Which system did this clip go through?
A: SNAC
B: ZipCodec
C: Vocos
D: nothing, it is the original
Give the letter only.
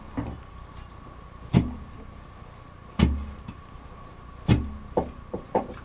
D